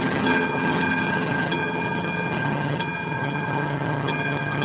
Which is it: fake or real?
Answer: fake